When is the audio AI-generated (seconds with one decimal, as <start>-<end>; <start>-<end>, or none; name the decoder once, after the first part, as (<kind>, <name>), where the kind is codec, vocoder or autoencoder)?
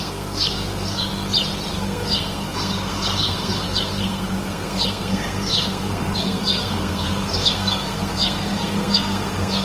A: 0.0-1.1 (codec, SNAC); 1.7-9.6